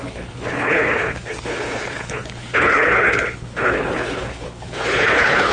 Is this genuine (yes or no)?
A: no